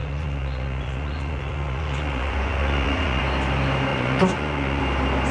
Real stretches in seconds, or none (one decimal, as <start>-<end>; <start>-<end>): 3.2-3.9; 4.8-5.3